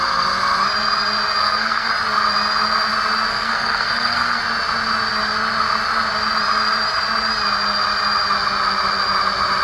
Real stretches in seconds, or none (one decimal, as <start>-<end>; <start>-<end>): 0.0-1.4; 1.9-3.3; 4.4-9.6